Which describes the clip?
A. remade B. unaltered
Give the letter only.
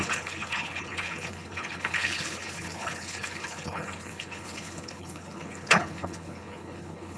A